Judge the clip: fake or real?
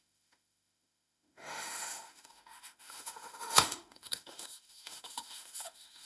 fake